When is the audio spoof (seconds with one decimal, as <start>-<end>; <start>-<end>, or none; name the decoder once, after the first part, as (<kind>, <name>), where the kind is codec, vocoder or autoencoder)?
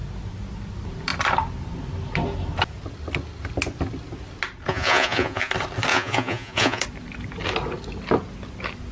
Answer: 4.7-5.5 (vocoder, Vocos); 5.9-6.8